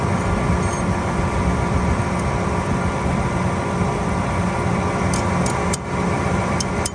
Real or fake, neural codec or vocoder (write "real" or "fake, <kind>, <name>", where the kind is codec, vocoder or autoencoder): real